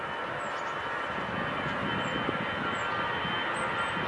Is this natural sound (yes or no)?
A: yes